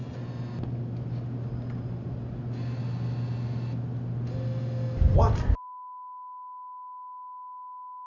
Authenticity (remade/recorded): recorded